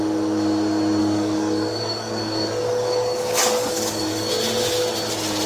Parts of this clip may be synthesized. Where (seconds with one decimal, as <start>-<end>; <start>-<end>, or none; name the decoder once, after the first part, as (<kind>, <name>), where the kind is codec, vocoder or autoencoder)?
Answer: 1.0-4.3 (codec, DAC)